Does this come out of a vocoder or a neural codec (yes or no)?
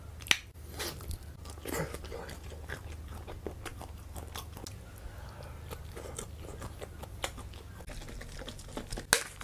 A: no